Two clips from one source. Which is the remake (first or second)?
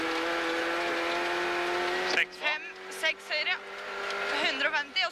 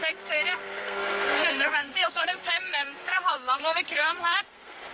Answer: second